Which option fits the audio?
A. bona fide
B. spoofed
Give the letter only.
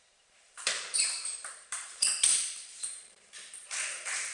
B